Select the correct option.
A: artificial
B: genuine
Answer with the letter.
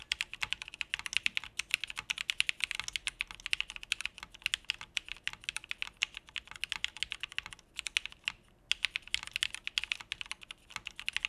B